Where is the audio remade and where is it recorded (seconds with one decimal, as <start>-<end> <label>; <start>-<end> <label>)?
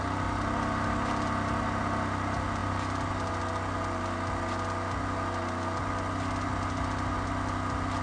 0.0-8.0 recorded